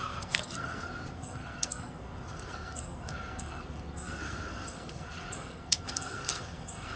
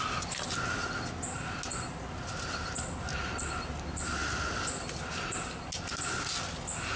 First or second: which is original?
second